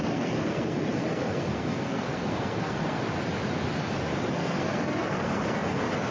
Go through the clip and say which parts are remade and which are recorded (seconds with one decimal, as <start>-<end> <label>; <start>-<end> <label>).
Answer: 0.0-3.0 remade; 3.0-4.3 recorded; 4.3-6.1 remade